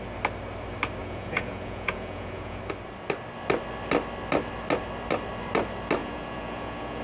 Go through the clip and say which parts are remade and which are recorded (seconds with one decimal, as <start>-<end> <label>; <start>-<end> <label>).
0.0-1.0 recorded; 1.0-2.6 remade; 2.6-6.0 recorded; 6.0-7.0 remade